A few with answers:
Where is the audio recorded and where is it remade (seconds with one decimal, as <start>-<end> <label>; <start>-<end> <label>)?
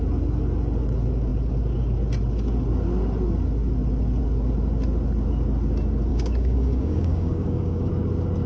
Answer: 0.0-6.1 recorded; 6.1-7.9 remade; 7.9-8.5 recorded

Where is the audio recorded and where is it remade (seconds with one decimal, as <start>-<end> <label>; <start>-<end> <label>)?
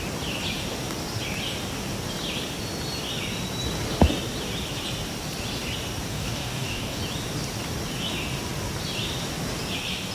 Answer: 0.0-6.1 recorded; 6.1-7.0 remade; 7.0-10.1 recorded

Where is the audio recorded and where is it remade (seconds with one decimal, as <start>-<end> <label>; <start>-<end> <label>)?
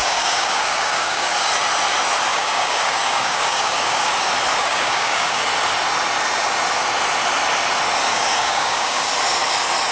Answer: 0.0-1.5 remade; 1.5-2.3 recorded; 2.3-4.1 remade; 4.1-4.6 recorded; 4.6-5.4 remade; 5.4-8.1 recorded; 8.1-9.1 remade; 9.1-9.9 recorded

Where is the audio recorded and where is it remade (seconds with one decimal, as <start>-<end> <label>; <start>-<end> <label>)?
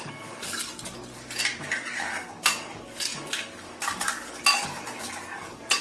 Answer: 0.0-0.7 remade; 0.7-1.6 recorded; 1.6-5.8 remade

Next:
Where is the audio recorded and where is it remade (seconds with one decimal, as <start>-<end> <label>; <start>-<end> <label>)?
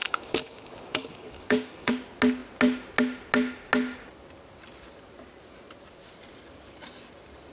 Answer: 0.0-1.9 remade; 1.9-7.5 recorded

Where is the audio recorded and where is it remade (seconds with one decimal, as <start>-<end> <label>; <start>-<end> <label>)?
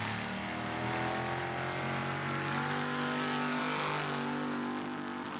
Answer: 0.0-5.4 recorded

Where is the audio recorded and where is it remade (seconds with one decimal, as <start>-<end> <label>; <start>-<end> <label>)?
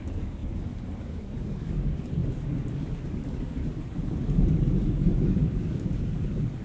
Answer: 0.0-6.6 remade